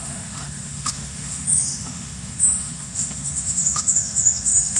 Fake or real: fake